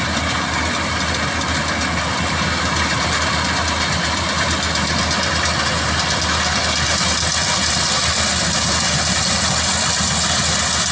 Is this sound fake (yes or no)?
no